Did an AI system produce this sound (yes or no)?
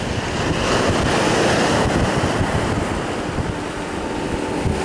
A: no